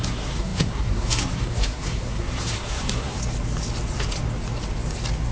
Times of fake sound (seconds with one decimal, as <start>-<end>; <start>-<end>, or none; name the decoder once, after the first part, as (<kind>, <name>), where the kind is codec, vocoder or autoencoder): 0.0-3.2 (codec, SNAC)